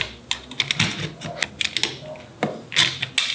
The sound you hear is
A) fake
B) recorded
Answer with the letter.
B